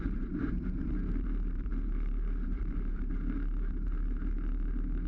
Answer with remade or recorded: remade